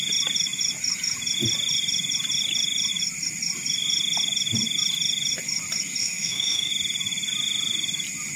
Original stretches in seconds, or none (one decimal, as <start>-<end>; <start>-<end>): 0.0-6.0; 6.7-8.4